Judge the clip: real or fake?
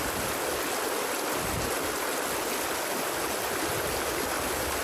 real